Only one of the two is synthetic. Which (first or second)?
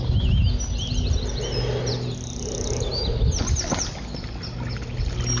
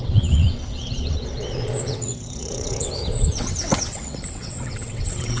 second